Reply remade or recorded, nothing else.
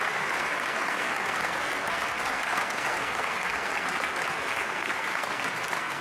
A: remade